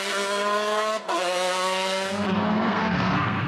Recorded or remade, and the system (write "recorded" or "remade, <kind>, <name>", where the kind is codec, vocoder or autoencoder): remade, codec, SNAC